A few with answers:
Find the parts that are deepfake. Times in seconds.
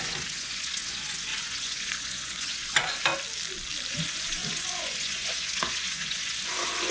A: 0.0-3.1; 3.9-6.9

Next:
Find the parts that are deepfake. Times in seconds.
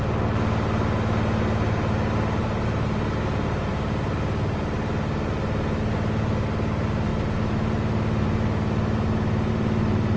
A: 2.4-3.2; 3.7-4.9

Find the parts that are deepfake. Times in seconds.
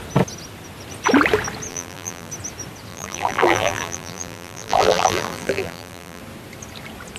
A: 1.7-2.3; 2.9-6.2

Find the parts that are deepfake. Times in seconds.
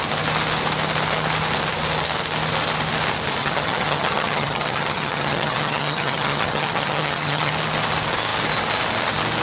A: 3.4-7.5